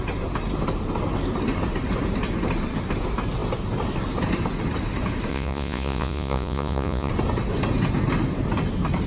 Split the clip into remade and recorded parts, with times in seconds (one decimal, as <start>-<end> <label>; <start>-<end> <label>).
0.0-5.3 recorded; 5.3-7.1 remade; 7.1-9.1 recorded